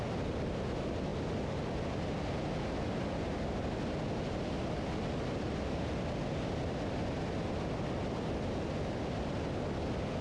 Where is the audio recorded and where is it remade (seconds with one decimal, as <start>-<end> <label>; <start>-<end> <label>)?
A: 0.0-10.2 recorded